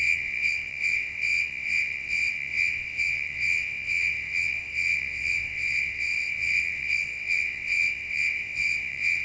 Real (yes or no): no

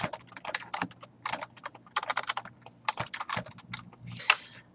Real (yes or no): yes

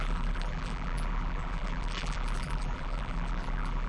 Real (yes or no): no